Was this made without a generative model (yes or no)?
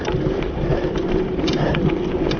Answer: no